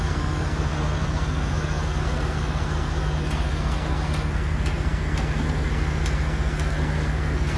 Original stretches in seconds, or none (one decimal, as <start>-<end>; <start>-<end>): none